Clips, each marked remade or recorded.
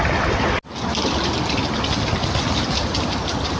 recorded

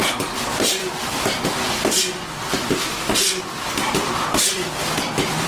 remade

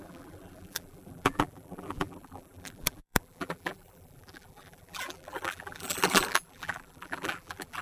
remade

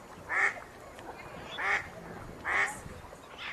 recorded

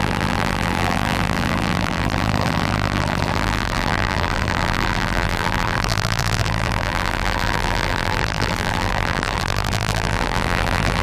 remade